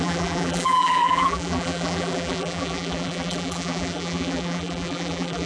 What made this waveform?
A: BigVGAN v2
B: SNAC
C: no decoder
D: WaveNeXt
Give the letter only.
A